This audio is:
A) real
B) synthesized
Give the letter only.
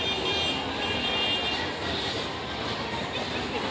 A